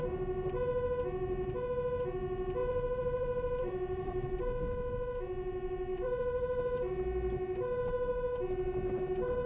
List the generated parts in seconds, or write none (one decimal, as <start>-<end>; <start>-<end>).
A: 2.6-4.4; 5.9-6.9